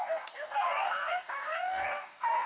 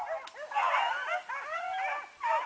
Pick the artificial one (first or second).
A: first